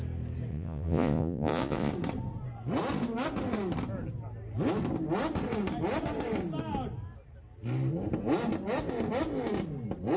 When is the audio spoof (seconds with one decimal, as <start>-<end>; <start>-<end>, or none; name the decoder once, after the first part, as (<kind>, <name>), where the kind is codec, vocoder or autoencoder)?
0.5-1.9 (vocoder, Vocos)